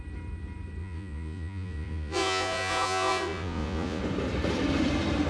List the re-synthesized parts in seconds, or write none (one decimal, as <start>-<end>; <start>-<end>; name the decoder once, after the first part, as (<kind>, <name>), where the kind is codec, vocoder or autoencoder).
0.8-4.0 (vocoder, Vocos)